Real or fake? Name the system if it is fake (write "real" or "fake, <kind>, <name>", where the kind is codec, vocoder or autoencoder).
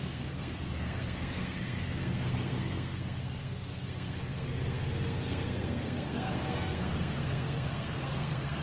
fake, codec, SNAC